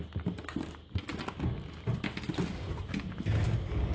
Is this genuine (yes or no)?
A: yes